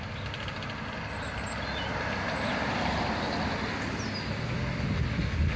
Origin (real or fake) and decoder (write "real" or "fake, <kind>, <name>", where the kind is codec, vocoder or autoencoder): real